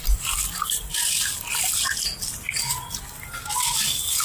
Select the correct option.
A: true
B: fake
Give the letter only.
A